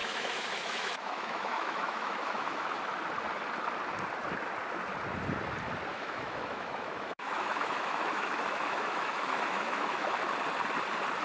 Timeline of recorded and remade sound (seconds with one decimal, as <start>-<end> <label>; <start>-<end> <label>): 0.0-2.8 remade; 2.8-5.9 recorded; 5.9-10.2 remade; 10.2-11.2 recorded